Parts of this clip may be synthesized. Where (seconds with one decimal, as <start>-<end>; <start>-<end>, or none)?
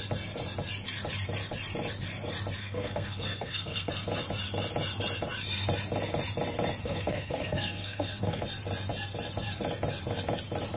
2.6-3.9; 6.8-8.4